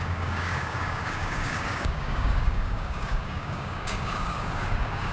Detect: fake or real fake